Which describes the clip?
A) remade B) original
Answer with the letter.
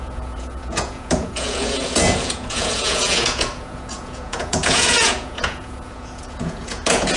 A